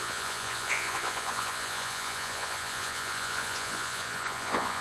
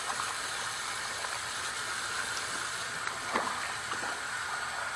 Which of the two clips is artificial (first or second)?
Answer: first